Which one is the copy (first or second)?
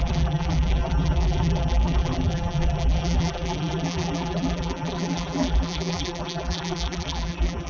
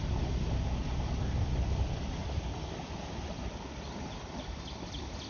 first